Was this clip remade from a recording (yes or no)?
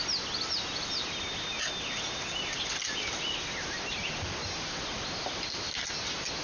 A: no